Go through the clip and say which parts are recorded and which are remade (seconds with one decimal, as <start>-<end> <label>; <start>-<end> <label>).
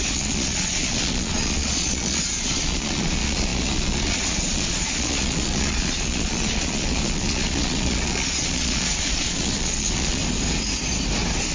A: 0.0-10.2 remade; 10.2-11.5 recorded